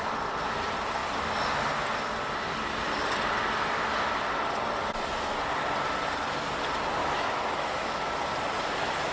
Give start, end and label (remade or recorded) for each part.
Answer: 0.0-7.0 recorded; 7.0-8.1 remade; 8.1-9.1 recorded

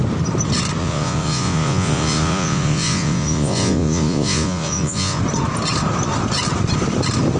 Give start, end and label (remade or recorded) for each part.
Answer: 0.0-0.8 recorded; 0.8-5.2 remade; 5.2-7.4 recorded

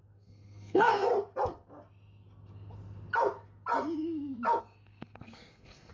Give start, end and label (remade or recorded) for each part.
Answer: 0.0-1.1 remade; 1.1-4.6 recorded; 4.6-5.9 remade

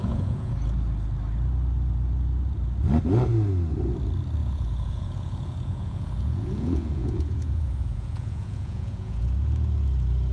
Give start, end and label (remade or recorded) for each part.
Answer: 0.0-0.5 remade; 0.5-4.4 recorded; 4.4-9.3 remade; 9.3-10.3 recorded